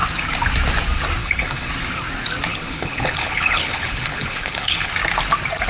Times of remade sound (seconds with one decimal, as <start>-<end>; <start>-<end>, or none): 1.2-1.7; 2.5-4.9